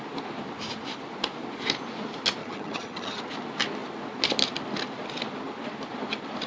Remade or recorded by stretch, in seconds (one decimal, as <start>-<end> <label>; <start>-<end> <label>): 0.0-2.4 recorded; 2.4-3.2 remade; 3.2-6.5 recorded